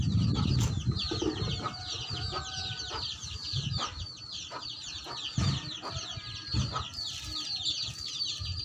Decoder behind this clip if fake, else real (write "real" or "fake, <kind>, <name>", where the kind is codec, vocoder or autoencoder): real